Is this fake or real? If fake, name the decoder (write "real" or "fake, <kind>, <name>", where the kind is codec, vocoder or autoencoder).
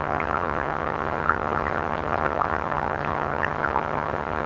fake, vocoder, HiFi-GAN